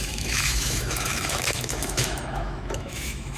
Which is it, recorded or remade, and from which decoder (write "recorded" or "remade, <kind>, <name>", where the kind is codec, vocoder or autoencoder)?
remade, autoencoder, DAC-VAE